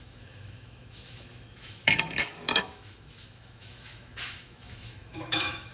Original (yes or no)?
no